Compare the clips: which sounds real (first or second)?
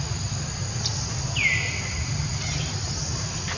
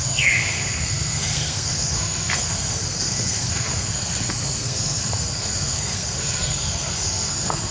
first